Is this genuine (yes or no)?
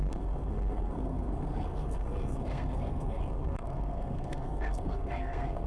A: no